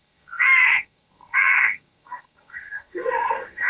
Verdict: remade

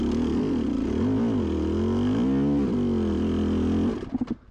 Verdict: recorded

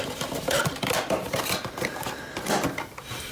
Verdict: remade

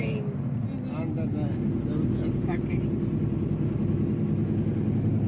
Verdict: recorded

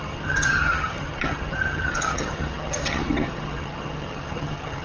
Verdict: remade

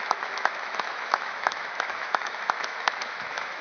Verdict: remade